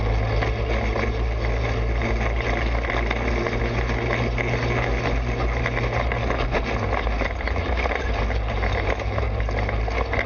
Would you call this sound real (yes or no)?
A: yes